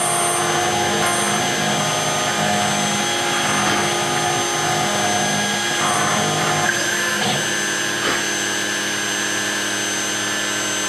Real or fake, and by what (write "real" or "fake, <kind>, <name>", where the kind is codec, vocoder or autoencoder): real